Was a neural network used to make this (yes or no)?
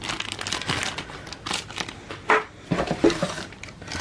no